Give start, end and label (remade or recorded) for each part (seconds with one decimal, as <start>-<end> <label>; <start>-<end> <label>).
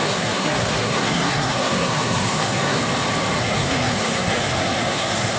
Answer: 0.0-2.8 remade; 2.8-3.4 recorded; 3.4-5.4 remade